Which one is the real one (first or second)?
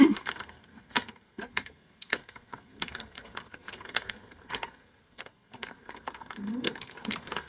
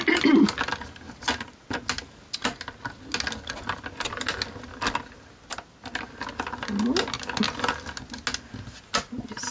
second